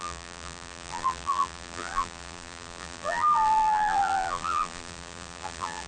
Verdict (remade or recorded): remade